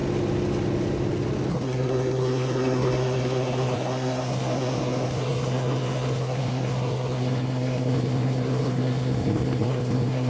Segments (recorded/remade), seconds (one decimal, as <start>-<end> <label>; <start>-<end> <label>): 0.0-1.5 recorded; 1.5-10.3 remade